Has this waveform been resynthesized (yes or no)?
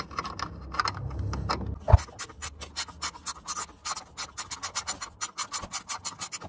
no